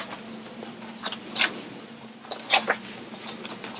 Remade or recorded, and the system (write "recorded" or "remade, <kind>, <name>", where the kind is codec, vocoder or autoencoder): recorded